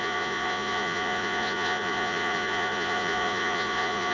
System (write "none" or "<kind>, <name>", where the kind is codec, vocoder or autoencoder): vocoder, Vocos